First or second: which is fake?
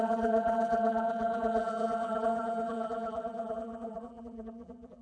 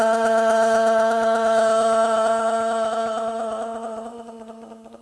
first